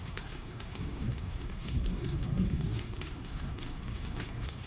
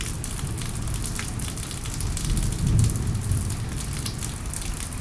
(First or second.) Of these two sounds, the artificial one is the first